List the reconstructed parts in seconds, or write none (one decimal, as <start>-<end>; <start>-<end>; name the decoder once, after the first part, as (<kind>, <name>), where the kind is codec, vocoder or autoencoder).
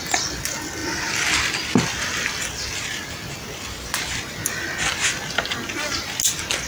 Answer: none